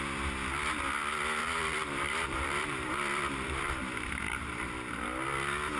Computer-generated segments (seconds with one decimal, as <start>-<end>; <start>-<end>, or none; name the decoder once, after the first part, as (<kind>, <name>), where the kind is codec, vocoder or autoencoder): 1.4-4.9 (vocoder, BigVGAN v2)